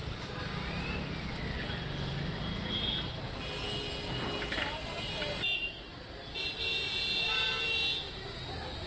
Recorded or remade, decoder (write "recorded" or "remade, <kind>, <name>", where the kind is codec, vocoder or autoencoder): recorded